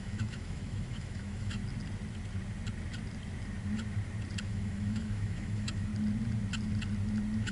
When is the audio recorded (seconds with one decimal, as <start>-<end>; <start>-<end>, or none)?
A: 1.6-4.4; 5.9-7.5